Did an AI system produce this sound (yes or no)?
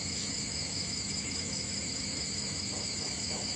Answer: yes